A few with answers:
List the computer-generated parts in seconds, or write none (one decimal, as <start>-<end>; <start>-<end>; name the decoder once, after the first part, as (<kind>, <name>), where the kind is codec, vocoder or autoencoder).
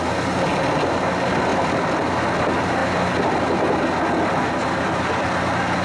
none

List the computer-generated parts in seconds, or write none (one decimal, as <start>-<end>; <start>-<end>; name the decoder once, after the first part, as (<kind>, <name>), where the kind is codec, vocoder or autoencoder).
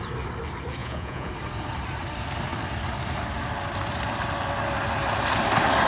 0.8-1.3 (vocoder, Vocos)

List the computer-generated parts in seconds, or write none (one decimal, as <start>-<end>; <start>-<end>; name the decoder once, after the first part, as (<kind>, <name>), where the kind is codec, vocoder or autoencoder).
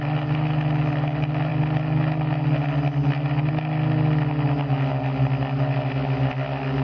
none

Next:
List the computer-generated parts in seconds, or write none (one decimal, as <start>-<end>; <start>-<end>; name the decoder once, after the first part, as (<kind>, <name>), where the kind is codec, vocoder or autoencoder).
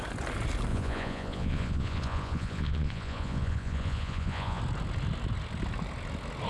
0.7-4.6 (vocoder, Vocos)